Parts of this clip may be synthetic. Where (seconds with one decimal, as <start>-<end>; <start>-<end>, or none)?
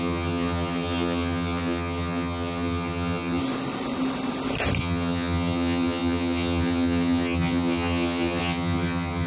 0.0-3.4; 4.8-9.3